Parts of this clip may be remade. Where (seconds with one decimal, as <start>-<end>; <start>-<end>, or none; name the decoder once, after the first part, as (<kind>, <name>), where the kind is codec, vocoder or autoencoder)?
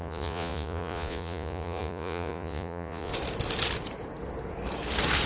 0.0-3.1 (vocoder, Vocos)